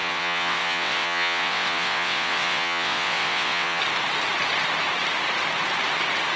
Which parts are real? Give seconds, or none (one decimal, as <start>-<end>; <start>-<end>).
3.8-6.4